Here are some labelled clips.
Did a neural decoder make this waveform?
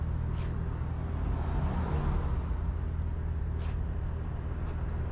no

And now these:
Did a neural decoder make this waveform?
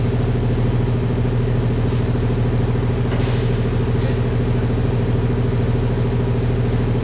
no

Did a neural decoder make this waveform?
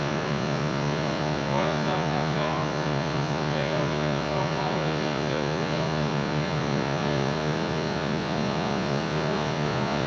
yes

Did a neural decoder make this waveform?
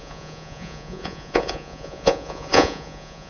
yes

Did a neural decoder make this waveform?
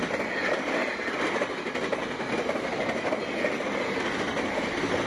no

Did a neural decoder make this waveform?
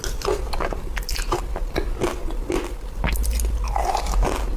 no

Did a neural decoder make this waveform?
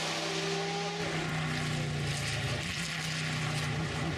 no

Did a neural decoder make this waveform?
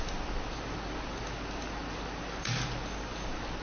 no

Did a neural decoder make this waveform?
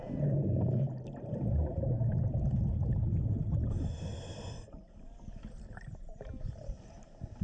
no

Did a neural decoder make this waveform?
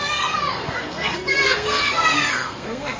yes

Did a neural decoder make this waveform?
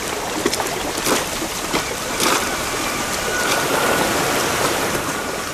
yes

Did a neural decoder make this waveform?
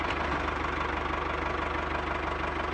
no